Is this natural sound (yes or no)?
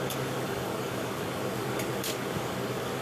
no